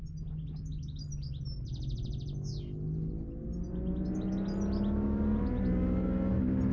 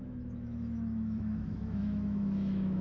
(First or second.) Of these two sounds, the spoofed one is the second